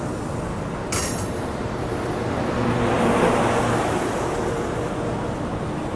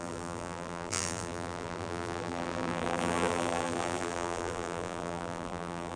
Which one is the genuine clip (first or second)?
first